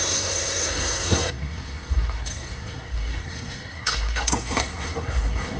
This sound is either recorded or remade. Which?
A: remade